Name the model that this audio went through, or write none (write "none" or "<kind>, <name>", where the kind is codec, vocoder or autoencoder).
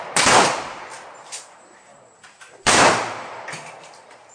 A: vocoder, BigVGAN v2